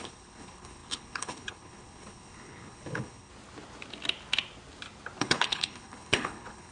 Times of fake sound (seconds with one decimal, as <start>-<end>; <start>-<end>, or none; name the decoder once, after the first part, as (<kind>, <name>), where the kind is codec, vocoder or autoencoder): 0.0-3.3 (codec, HILCodec); 5.2-6.7